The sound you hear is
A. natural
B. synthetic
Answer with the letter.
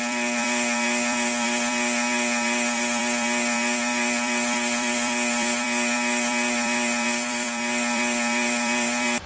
B